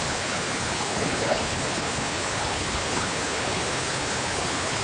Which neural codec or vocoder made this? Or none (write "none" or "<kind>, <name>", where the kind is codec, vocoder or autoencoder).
codec, HILCodec